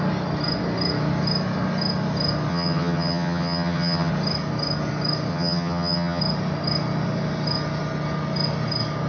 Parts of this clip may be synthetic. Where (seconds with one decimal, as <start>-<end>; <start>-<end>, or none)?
2.5-4.1; 5.3-6.2